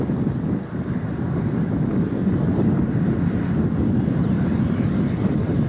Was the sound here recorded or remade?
recorded